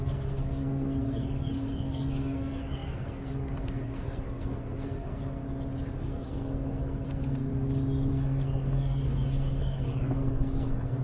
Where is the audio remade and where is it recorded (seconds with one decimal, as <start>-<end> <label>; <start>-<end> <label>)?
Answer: 0.0-5.4 remade; 5.4-6.0 recorded; 6.0-7.5 remade; 7.5-8.1 recorded; 8.1-11.0 remade